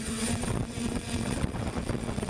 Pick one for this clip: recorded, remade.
remade